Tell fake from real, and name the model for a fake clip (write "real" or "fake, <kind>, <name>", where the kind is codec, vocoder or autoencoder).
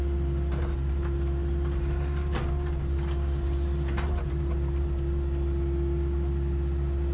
real